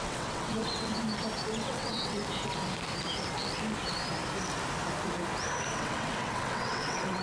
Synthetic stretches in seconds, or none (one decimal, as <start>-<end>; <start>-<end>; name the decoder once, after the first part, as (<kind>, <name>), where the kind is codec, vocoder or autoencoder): 0.0-0.9 (vocoder, WaveNeXt); 1.6-2.2; 5.7-7.2